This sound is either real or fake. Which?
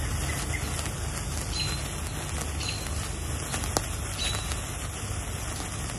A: real